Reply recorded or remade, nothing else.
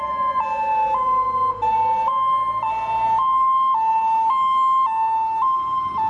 recorded